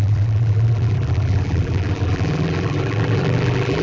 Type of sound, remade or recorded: remade